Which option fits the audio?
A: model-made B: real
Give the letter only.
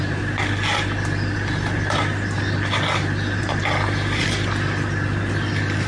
B